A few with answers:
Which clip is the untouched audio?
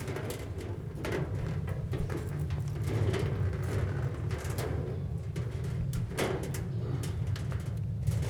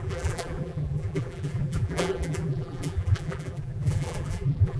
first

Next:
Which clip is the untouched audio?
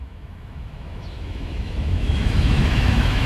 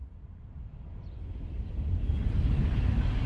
second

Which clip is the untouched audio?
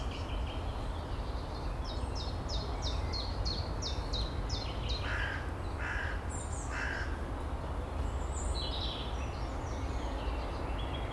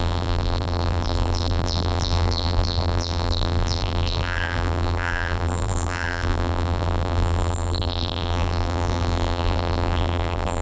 first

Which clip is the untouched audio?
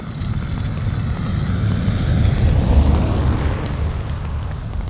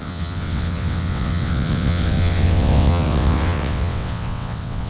first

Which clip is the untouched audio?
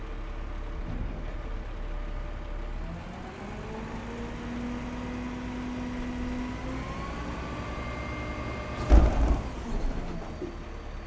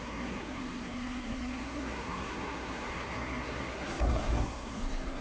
first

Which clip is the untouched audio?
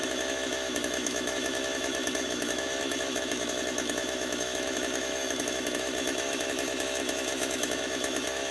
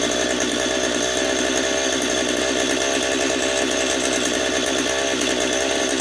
second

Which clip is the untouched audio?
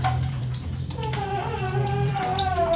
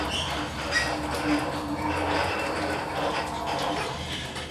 second